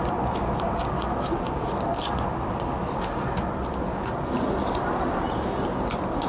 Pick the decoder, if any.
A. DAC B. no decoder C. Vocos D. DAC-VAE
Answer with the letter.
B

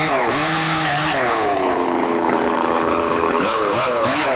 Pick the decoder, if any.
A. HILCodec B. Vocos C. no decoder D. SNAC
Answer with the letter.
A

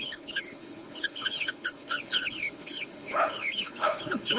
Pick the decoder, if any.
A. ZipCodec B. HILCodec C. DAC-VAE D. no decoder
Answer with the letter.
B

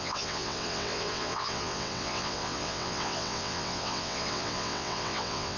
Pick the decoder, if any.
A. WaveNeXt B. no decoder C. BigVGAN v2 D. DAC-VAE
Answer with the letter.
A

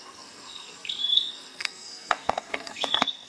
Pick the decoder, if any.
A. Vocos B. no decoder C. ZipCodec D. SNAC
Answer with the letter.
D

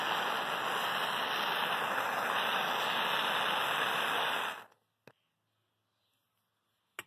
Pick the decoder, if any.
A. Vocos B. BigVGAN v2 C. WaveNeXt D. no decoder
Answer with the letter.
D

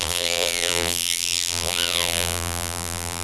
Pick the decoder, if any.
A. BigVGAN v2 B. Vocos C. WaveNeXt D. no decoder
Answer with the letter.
A